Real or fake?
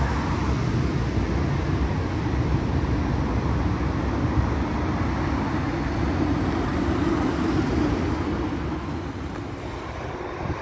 real